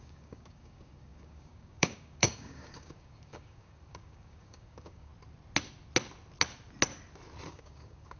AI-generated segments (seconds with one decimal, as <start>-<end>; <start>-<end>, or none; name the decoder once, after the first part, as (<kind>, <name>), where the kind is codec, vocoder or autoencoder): 0.0-5.1 (codec, DAC); 7.5-8.2